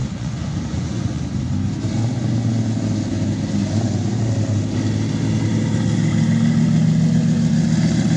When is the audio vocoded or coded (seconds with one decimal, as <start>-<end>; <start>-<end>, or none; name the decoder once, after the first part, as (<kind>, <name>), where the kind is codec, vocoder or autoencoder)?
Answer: 0.0-1.2 (vocoder, Vocos)